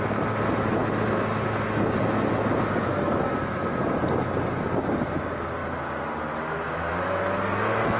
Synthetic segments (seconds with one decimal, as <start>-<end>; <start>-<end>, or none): none